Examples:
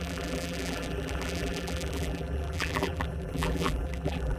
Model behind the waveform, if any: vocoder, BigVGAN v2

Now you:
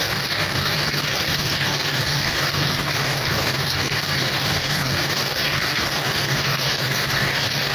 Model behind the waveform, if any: codec, DAC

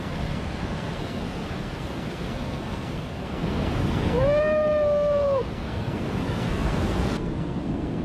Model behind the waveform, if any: codec, SNAC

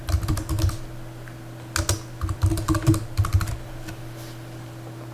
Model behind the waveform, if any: none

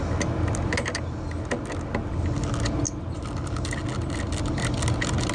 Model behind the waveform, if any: none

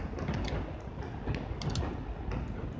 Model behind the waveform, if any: none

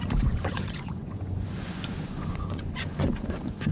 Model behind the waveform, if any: vocoder, Vocos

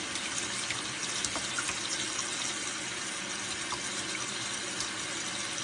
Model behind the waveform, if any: none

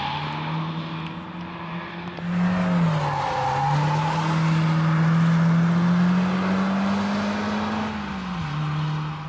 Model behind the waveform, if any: none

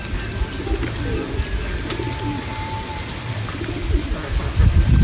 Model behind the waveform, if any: none